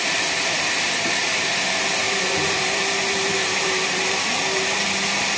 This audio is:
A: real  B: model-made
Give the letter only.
B